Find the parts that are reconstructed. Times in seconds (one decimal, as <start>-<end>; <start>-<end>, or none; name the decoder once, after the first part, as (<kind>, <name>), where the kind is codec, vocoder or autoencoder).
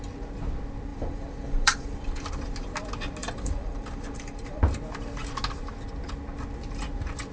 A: 0.9-2.3 (vocoder, BigVGAN v2); 3.2-4.6